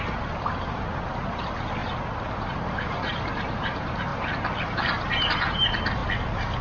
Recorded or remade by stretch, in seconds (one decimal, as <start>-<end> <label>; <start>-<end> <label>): 0.0-1.8 remade; 1.8-2.3 recorded; 2.3-4.1 remade; 4.1-5.0 recorded; 5.0-6.0 remade; 6.0-6.6 recorded